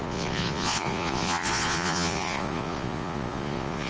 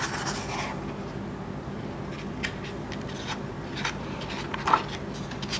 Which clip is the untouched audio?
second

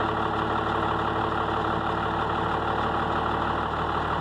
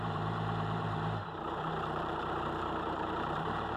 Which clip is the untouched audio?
first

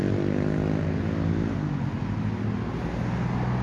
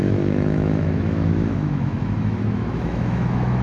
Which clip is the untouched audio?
first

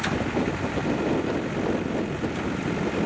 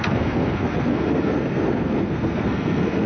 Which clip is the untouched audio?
first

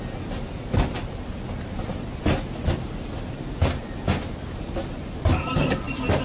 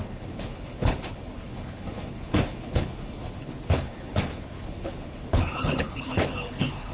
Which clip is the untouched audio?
first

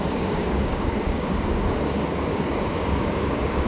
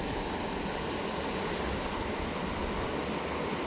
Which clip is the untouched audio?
second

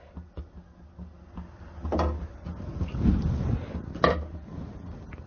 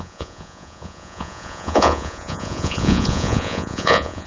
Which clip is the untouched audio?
first